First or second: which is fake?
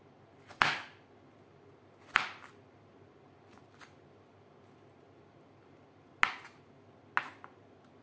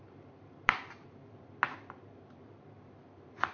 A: second